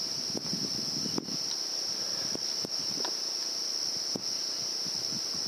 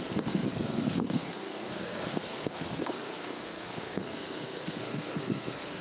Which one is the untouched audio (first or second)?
first